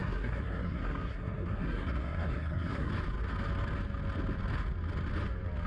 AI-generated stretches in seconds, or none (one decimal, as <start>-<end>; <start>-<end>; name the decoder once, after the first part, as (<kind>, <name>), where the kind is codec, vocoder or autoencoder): 0.0-2.9 (codec, SNAC)